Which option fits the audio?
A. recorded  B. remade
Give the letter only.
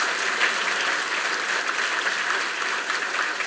A